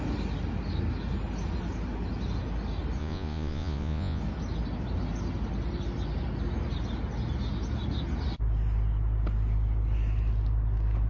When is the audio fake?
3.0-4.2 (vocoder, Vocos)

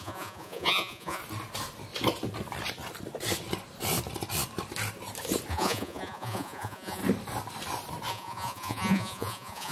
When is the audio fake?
0.0-1.2 (vocoder, Vocos); 5.5-7.0; 8.1-9.7

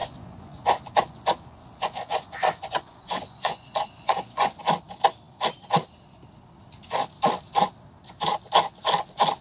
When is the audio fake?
0.0-4.6 (vocoder, Vocos)

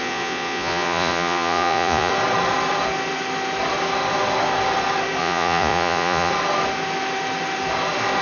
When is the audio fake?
0.0-2.1 (vocoder, Vocos); 5.2-6.3

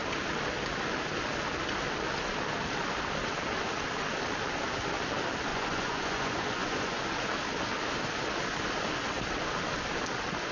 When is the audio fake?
5.5-7.0 (vocoder, Vocos)